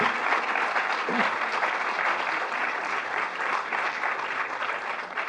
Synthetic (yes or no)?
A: no